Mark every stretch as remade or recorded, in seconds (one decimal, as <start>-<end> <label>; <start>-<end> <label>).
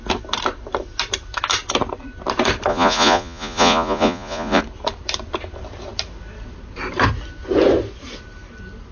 0.0-2.7 recorded; 2.7-4.6 remade; 4.6-8.9 recorded